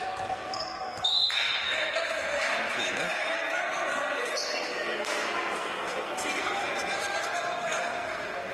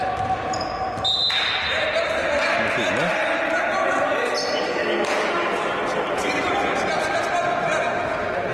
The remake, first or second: first